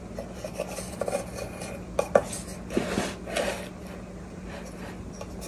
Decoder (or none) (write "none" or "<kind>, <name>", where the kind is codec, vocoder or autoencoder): none